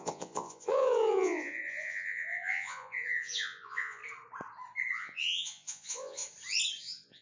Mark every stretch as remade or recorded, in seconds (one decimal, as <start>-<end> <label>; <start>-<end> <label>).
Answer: 0.0-4.0 remade; 4.0-4.9 recorded; 4.9-6.2 remade; 6.2-6.8 recorded; 6.8-7.2 remade

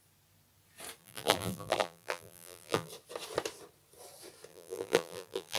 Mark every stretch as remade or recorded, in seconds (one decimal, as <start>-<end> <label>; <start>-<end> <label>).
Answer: 0.0-1.0 recorded; 1.0-2.9 remade; 2.9-4.5 recorded; 4.5-5.6 remade

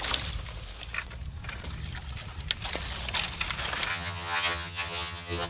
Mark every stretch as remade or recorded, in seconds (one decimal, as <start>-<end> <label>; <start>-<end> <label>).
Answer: 0.0-3.9 recorded; 3.9-5.5 remade

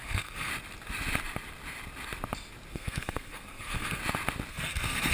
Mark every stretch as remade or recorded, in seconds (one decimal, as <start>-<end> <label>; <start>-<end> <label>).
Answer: 0.0-0.5 remade; 0.5-2.7 recorded; 2.7-4.0 remade; 4.0-4.5 recorded; 4.5-5.1 remade

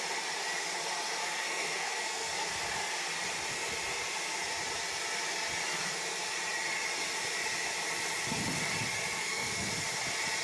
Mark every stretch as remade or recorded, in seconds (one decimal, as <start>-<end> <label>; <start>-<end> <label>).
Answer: 0.0-1.2 recorded; 1.2-2.5 remade; 2.5-9.2 recorded; 9.2-9.7 remade; 9.7-10.4 recorded

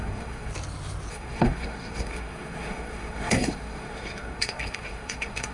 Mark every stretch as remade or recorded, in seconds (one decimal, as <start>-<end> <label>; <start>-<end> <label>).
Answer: 0.0-0.5 remade; 0.5-1.1 recorded; 1.1-5.5 remade

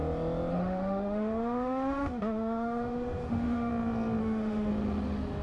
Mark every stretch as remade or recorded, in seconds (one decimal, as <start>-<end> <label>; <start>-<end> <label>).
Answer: 0.0-0.5 recorded; 0.5-3.7 remade; 3.7-4.2 recorded; 4.2-4.7 remade; 4.7-5.4 recorded